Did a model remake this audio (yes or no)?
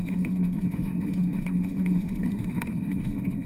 yes